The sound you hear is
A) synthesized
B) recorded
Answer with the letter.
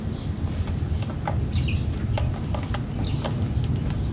B